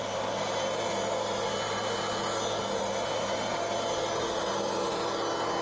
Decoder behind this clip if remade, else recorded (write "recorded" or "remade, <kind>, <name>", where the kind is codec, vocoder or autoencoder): recorded